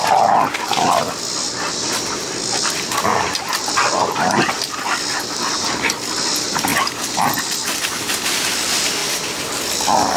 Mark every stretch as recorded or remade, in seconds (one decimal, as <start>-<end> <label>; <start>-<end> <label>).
0.0-3.1 recorded; 3.1-3.6 remade; 3.6-9.0 recorded; 9.0-9.6 remade; 9.6-10.2 recorded